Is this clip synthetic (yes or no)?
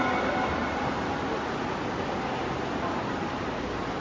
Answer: no